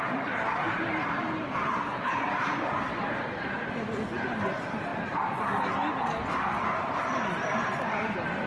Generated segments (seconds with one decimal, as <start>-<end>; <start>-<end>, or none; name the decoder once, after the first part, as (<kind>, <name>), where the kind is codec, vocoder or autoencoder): 0.6-3.7 (vocoder, BigVGAN v2)